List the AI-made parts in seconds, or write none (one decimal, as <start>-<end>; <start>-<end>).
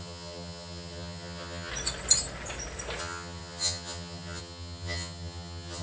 0.0-1.7; 3.0-5.8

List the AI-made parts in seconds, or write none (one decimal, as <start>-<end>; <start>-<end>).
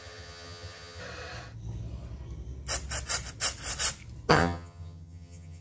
0.0-1.0; 4.3-5.6